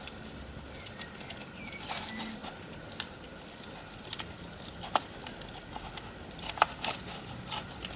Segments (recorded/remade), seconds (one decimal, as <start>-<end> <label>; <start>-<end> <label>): 0.0-8.0 recorded